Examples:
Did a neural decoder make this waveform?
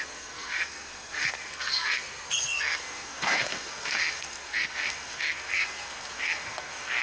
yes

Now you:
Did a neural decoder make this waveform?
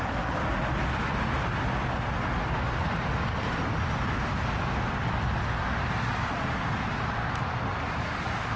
no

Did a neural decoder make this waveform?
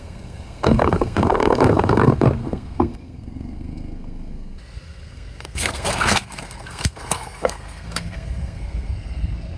yes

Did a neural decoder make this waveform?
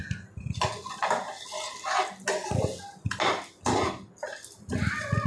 no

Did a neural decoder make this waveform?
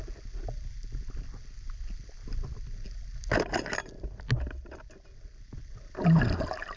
no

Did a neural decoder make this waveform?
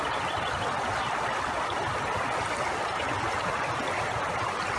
no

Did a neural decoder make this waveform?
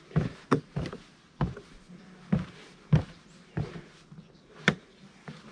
no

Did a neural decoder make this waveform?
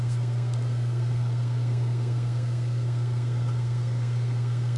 yes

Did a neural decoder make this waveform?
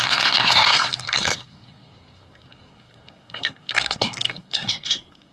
yes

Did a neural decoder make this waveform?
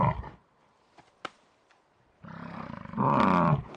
no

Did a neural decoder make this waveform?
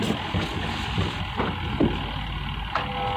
no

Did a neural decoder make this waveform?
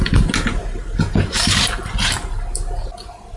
no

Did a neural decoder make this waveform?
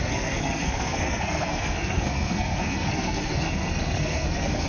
yes